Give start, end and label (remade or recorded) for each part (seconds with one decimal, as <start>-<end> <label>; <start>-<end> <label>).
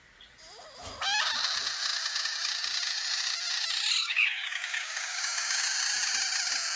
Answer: 0.0-4.0 recorded; 4.0-5.6 remade; 5.6-6.8 recorded